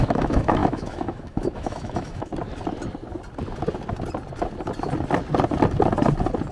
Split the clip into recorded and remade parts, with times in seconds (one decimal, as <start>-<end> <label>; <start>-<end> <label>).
0.0-2.3 remade; 2.3-6.5 recorded